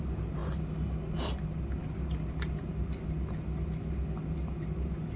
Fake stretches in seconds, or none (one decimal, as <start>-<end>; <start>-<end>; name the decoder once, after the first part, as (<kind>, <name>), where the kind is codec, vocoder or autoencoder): none